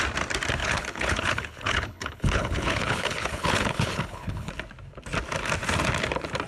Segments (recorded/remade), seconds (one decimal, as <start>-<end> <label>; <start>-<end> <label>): 0.0-0.6 recorded; 0.6-4.5 remade; 4.5-6.5 recorded